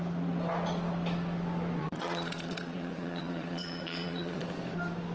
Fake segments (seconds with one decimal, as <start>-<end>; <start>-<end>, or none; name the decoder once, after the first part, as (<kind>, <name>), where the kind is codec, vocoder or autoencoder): 1.8-4.4 (vocoder, Vocos)